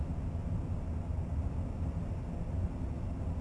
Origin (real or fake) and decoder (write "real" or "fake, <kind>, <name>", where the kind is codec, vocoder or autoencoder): real